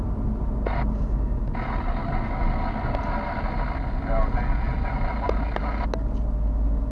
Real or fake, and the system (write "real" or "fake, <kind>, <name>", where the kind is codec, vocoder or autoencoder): real